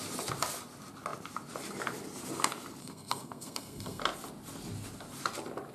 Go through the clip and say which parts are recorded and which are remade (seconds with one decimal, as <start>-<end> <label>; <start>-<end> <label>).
0.0-2.8 recorded; 2.8-4.0 remade; 4.0-5.7 recorded